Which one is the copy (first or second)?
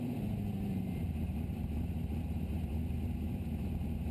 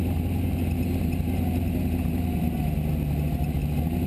first